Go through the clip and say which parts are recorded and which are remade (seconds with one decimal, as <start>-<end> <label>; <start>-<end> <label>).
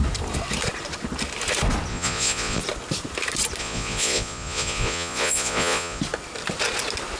0.0-1.9 recorded; 1.9-2.6 remade; 2.6-3.6 recorded; 3.6-6.0 remade; 6.0-7.2 recorded